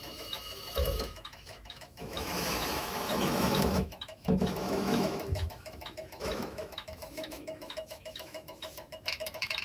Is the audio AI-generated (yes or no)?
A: yes